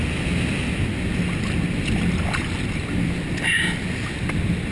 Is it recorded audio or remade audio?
recorded